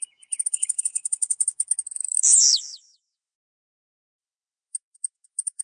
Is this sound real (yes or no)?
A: no